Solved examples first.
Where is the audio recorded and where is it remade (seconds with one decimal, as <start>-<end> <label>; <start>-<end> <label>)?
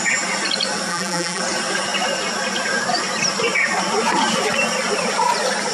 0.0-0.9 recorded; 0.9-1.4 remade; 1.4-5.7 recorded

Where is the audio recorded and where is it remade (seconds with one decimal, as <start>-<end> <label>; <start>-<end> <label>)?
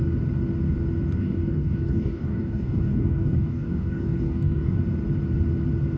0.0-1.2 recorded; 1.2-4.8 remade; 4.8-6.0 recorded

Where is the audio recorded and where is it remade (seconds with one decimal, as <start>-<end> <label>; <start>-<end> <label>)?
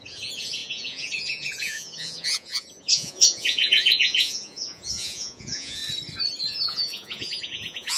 0.0-5.8 remade; 5.8-6.4 recorded; 6.4-8.0 remade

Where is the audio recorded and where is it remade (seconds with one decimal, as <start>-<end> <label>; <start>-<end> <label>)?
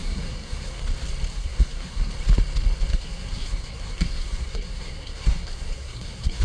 0.0-0.8 remade; 0.8-1.3 recorded; 1.3-2.1 remade; 2.1-2.9 recorded; 2.9-6.4 remade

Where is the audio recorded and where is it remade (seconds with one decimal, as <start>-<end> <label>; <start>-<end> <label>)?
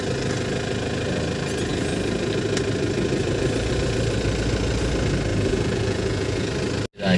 0.0-5.3 recorded; 5.3-6.5 remade; 6.5-7.2 recorded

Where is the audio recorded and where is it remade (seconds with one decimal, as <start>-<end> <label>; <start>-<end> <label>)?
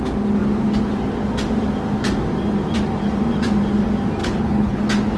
0.0-4.2 recorded; 4.2-4.8 remade; 4.8-5.2 recorded